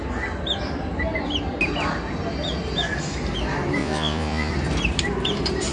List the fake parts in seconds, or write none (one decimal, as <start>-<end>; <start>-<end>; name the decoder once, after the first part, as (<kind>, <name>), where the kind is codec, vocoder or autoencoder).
3.8-4.5 (vocoder, Vocos)